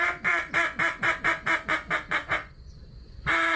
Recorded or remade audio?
remade